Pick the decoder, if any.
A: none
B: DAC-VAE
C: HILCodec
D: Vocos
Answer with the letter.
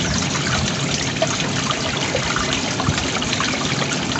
A